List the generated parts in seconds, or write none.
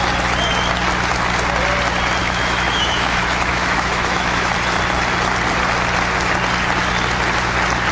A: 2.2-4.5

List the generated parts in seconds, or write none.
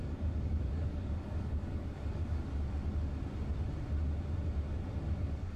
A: 0.0-2.4; 5.1-5.6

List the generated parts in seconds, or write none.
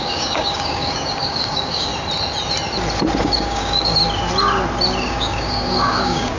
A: 0.0-1.9; 3.2-4.0; 5.1-6.4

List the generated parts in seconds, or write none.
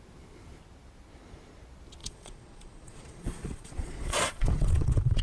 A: 2.0-5.2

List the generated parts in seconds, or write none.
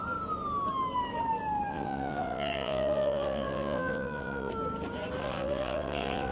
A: 1.7-4.5; 5.2-6.3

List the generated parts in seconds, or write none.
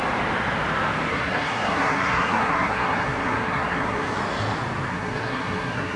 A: 1.1-4.2; 4.9-6.0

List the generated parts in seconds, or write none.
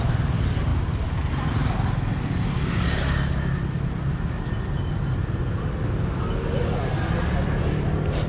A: none